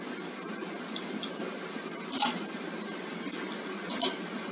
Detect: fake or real real